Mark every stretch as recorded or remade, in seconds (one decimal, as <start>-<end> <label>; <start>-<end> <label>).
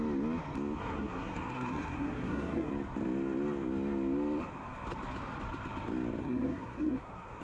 0.0-0.8 recorded; 0.8-2.7 remade; 2.7-6.2 recorded; 6.2-7.4 remade